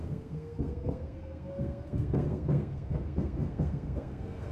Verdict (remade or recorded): remade